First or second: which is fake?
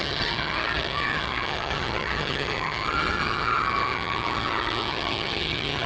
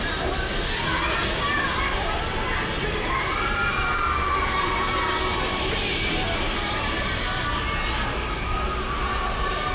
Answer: first